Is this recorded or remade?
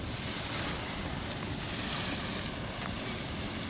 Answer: recorded